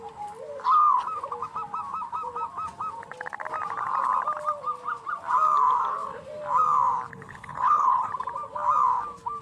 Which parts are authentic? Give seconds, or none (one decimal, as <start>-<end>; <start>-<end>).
0.0-7.1; 8.1-9.4